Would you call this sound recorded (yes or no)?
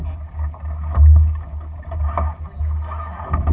yes